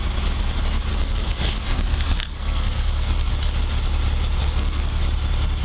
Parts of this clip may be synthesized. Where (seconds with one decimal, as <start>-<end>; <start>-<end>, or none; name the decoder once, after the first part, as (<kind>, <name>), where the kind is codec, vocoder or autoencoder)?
0.9-3.3 (codec, SNAC); 4.4-5.0